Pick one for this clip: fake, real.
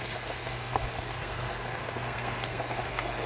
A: fake